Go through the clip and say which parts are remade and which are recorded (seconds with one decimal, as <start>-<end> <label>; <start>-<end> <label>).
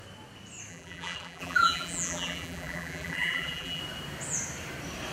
0.0-0.7 recorded; 0.7-3.8 remade; 3.8-5.1 recorded